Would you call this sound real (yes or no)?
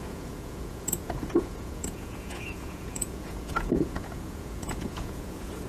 no